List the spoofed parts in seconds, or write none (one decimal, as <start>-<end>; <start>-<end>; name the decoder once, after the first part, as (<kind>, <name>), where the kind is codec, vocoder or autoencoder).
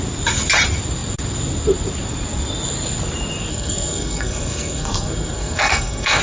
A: 3.5-6.2 (codec, SNAC)